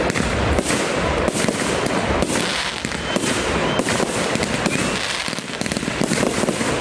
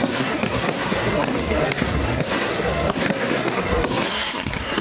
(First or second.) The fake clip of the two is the second